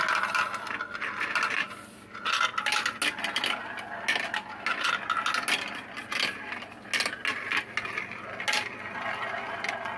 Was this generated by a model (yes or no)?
no